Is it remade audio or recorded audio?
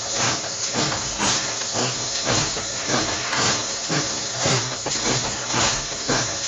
remade